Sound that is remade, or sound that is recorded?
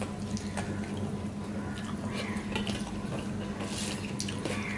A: recorded